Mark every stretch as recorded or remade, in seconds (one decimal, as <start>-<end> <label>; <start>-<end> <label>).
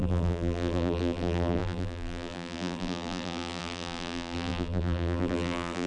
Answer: 0.0-5.9 remade